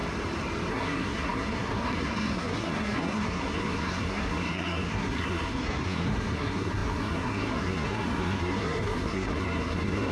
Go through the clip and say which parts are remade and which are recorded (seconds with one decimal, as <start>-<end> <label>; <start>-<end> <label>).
0.0-0.7 recorded; 0.7-10.1 remade